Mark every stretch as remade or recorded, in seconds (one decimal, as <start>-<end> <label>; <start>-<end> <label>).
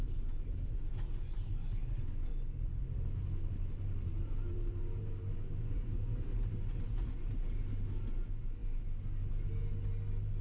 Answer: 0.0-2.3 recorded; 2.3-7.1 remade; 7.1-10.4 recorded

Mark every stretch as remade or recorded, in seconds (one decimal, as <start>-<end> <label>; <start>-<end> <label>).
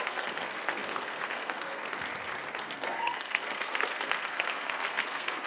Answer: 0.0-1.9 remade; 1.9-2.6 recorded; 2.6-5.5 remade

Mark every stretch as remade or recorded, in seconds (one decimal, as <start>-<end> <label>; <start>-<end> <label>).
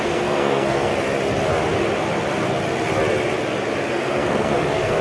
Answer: 0.0-0.9 remade; 0.9-3.9 recorded; 3.9-5.0 remade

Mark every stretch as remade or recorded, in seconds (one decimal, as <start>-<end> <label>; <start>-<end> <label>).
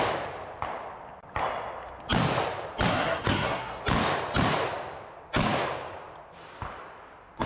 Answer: 0.0-2.9 recorded; 2.9-3.8 remade; 3.8-7.5 recorded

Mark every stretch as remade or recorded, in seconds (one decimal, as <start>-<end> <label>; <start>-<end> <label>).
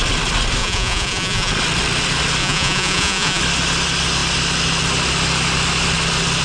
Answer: 0.0-0.6 recorded; 0.6-1.5 remade; 1.5-2.4 recorded; 2.4-3.4 remade; 3.4-6.4 recorded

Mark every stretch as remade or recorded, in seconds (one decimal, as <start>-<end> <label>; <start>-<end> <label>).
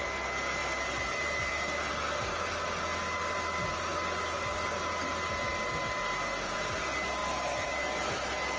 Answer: 0.0-8.6 recorded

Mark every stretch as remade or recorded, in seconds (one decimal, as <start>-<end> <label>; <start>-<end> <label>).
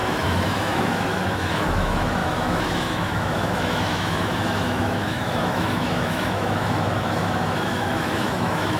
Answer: 0.0-8.8 remade